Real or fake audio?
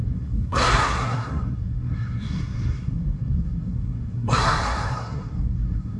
fake